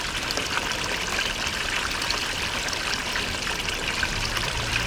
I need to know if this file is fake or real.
fake